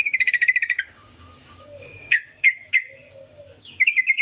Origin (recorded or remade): remade